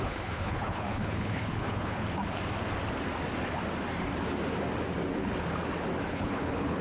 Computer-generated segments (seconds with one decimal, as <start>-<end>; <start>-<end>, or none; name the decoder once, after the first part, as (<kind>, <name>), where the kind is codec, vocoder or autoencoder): 0.0-2.0 (codec, HILCodec); 6.1-6.8